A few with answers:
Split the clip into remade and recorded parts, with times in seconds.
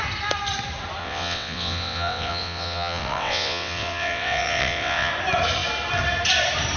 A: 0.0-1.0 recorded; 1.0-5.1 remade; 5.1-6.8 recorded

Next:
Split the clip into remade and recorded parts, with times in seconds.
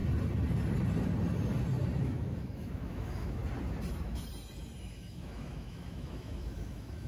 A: 0.0-2.0 recorded; 2.0-3.4 remade; 3.4-3.9 recorded; 3.9-4.3 remade; 4.3-4.8 recorded; 4.8-7.1 remade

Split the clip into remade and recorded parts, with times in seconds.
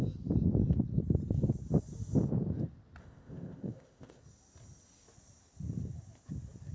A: 0.0-3.0 recorded; 3.0-4.2 remade; 4.2-6.7 recorded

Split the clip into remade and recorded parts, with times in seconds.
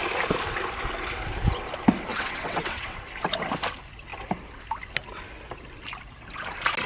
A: 0.0-2.1 recorded; 2.1-3.0 remade; 3.0-6.9 recorded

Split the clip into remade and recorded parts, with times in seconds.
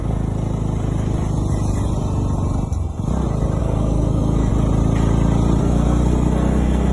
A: 0.0-3.6 recorded; 3.6-4.5 remade; 4.5-5.6 recorded; 5.6-6.9 remade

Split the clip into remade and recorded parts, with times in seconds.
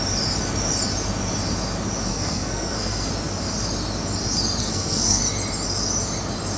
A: 0.0-2.1 recorded; 2.1-3.1 remade; 3.1-4.6 recorded; 4.6-5.2 remade; 5.2-6.6 recorded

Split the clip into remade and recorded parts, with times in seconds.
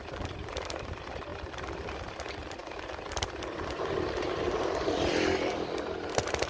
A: 0.0-6.5 remade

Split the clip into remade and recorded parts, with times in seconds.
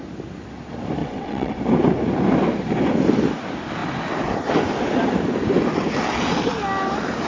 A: 0.0-1.0 recorded; 1.0-1.5 remade; 1.5-7.3 recorded